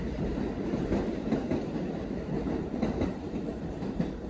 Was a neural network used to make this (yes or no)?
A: yes